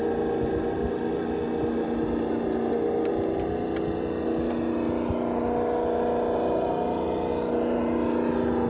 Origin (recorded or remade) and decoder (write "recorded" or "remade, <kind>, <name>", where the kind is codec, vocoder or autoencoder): recorded